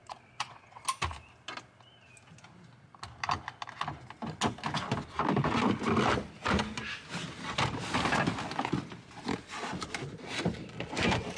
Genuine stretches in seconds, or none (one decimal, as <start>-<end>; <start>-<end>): 0.8-11.4